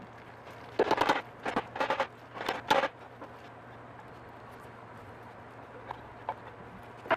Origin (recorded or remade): recorded